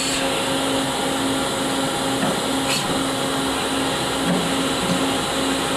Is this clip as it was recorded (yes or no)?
yes